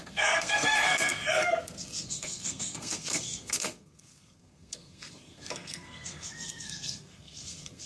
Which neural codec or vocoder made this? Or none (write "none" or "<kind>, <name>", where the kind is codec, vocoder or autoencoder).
codec, SNAC